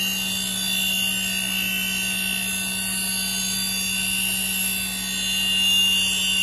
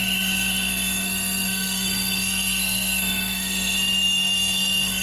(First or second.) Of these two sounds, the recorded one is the first